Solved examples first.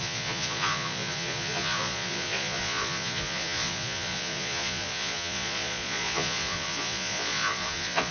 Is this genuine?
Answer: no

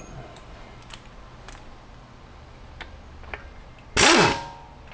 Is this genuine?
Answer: yes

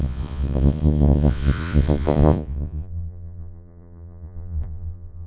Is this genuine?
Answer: no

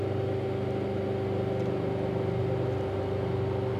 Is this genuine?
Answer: yes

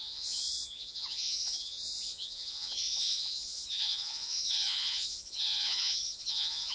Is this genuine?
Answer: no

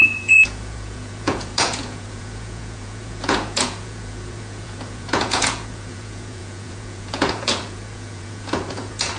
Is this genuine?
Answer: no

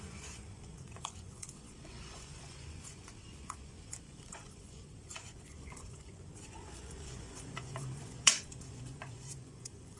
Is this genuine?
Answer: no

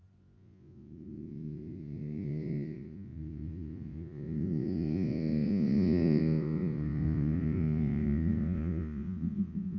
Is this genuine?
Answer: no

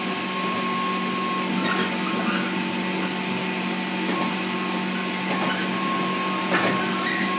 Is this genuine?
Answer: yes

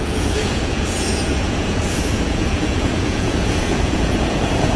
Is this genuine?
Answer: no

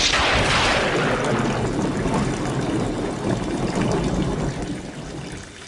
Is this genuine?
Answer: yes